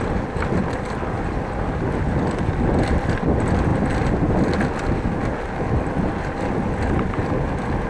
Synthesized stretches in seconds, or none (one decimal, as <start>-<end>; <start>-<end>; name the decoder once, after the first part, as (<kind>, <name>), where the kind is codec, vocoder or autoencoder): none

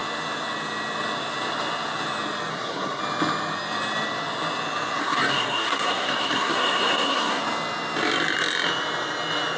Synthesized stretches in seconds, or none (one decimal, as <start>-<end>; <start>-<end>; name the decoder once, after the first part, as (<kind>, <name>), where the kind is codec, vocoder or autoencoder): 2.5-3.0 (codec, SNAC); 5.0-7.4

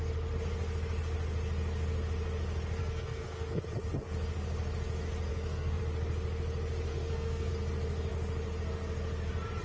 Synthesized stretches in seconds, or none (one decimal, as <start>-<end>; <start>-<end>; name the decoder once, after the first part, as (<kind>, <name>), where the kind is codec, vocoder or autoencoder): 2.8-3.6 (codec, SNAC); 5.3-5.8; 6.9-7.5

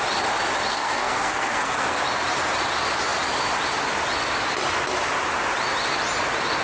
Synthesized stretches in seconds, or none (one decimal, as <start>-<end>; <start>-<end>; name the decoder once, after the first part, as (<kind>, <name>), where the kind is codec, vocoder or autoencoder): 0.7-2.0 (codec, SNAC)